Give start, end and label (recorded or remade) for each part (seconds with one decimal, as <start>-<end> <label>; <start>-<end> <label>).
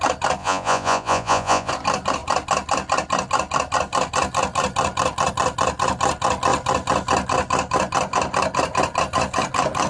0.0-0.4 recorded; 0.4-1.7 remade; 1.7-9.9 recorded